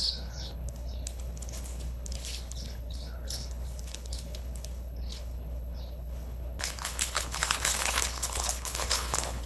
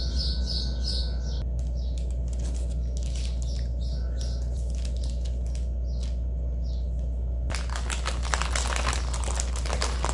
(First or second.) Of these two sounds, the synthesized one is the first